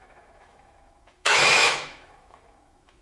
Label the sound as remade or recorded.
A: remade